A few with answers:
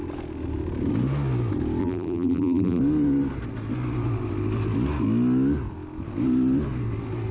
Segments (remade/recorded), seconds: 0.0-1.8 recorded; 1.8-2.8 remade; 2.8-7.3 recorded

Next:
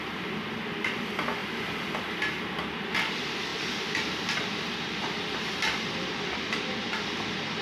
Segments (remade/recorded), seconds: 0.0-1.4 remade; 1.4-2.5 recorded; 2.5-3.5 remade; 3.5-4.6 recorded; 4.6-7.6 remade

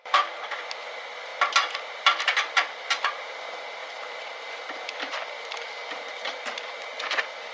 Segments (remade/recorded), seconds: 0.0-7.5 recorded

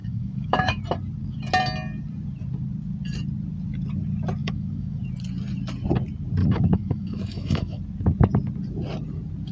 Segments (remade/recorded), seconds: 0.0-0.8 remade; 0.8-4.4 recorded; 4.4-5.0 remade; 5.0-6.4 recorded; 6.4-7.8 remade; 7.8-9.5 recorded

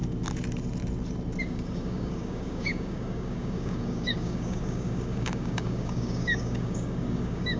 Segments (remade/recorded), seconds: 0.0-1.4 recorded; 1.4-7.6 remade

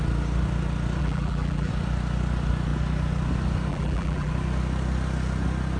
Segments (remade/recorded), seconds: 0.0-1.0 recorded; 1.0-1.7 remade; 1.7-3.7 recorded; 3.7-4.3 remade; 4.3-5.8 recorded